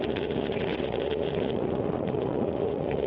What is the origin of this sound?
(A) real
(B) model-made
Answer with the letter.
B